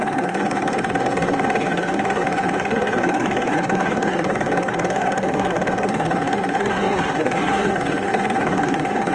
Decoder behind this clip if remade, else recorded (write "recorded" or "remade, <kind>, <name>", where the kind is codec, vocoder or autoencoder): remade, codec, SNAC